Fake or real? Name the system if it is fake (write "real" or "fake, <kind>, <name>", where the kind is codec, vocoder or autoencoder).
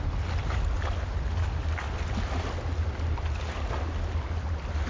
real